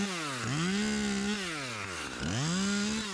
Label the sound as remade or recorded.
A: recorded